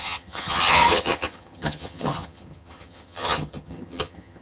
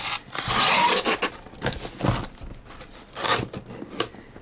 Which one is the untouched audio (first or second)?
second